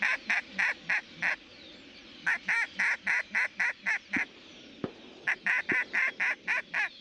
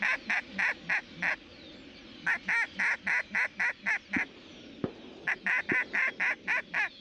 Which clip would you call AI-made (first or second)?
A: first